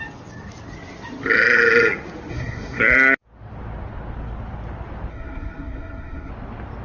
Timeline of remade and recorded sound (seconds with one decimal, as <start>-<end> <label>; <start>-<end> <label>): 0.0-2.3 recorded; 2.3-2.8 remade; 2.8-5.1 recorded; 5.1-6.3 remade; 6.3-6.8 recorded